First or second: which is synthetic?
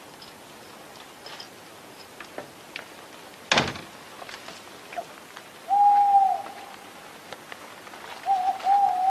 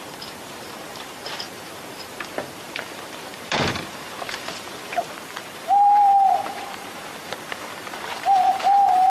second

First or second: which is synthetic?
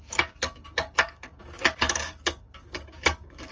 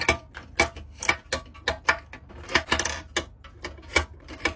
first